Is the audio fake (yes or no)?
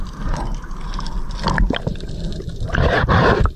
no